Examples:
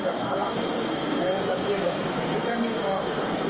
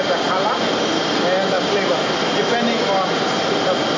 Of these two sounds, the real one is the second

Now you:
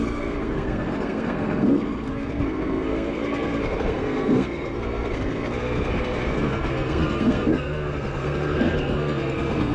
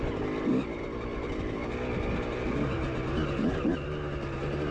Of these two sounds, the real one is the second